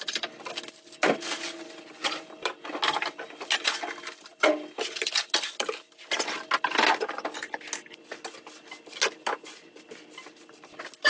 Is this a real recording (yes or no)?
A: yes